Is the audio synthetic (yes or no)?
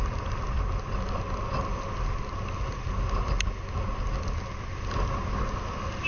no